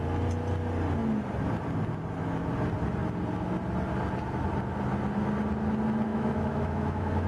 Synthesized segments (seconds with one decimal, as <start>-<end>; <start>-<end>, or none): 6.1-7.3

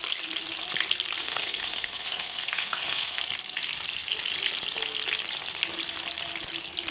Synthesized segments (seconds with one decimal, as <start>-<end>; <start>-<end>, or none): 1.2-3.2